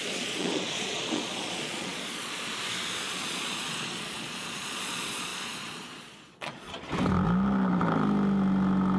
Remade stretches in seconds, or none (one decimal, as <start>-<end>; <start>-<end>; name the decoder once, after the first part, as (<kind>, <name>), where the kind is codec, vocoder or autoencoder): 0.0-2.5 (vocoder, Vocos); 3.1-6.7